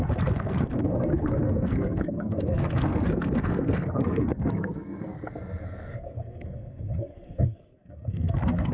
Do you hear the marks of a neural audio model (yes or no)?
yes